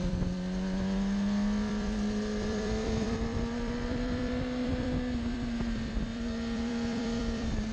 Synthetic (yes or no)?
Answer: yes